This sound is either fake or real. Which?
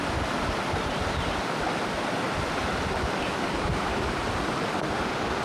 real